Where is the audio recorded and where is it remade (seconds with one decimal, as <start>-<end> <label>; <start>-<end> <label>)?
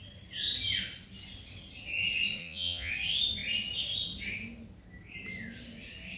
0.0-2.4 recorded; 2.4-2.9 remade; 2.9-6.2 recorded